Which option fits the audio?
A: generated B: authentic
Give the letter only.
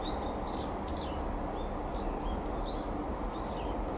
B